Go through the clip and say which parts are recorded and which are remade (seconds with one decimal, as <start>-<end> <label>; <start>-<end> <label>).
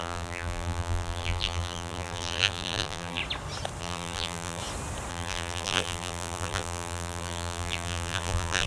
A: 0.0-3.2 remade; 3.2-3.8 recorded; 3.8-4.6 remade; 4.6-5.1 recorded; 5.1-8.7 remade